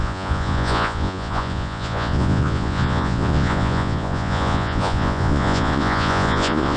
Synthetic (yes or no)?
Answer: yes